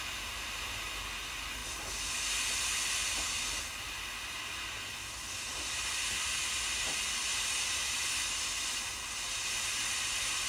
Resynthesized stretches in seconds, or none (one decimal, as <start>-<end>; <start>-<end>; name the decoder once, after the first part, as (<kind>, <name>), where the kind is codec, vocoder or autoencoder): none